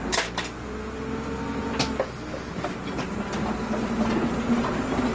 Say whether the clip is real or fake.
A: real